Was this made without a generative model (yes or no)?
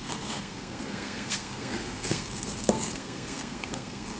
no